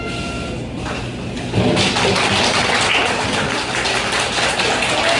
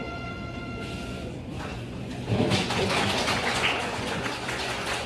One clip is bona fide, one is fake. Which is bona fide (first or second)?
first